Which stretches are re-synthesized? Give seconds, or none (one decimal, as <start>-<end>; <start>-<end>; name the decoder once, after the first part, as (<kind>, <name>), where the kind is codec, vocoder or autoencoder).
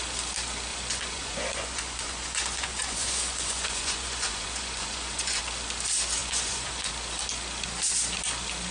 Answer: 0.7-5.4 (vocoder, Vocos); 6.2-6.9